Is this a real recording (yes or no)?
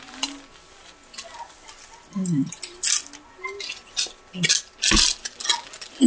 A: yes